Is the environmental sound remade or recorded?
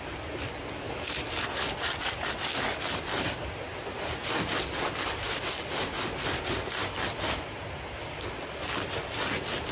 recorded